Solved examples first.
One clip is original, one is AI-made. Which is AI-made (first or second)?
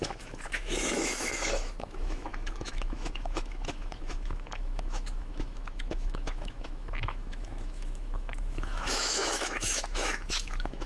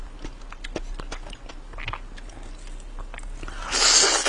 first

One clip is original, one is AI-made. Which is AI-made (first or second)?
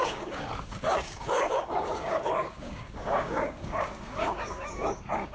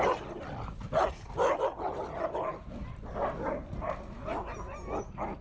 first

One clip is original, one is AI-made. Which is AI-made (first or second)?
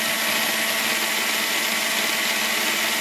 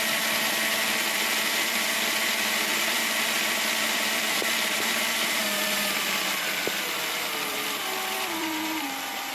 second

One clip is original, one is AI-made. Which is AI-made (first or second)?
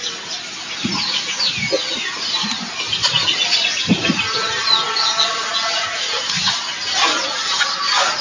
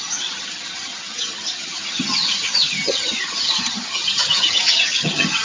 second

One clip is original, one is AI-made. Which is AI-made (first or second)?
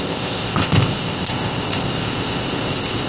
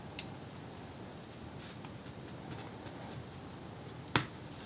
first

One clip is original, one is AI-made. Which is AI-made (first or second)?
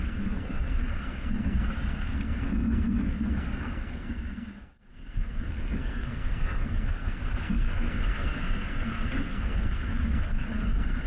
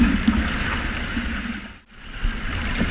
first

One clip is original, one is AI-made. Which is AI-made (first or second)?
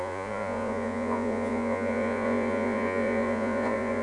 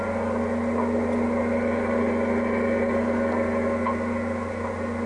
first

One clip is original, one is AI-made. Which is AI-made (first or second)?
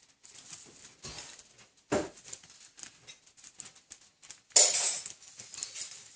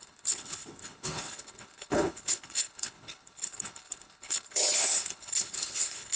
second